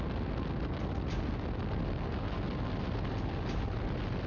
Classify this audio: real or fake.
real